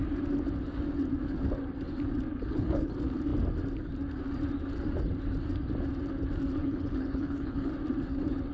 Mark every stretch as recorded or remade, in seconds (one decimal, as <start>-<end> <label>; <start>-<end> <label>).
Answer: 0.0-2.3 recorded; 2.3-2.9 remade; 2.9-6.6 recorded; 6.6-7.7 remade; 7.7-8.5 recorded